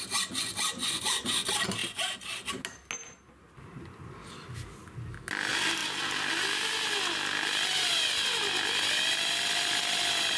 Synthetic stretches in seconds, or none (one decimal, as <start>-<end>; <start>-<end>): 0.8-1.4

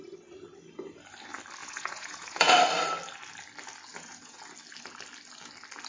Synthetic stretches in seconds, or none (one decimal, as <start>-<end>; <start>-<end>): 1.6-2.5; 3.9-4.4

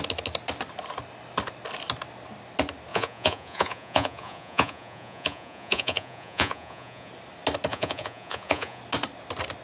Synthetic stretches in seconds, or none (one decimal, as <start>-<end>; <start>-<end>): 2.9-7.1; 7.7-8.8

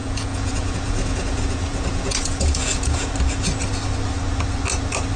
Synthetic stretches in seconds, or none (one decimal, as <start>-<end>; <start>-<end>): 0.0-3.1